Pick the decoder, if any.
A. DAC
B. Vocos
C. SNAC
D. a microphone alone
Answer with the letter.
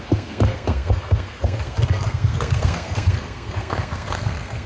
C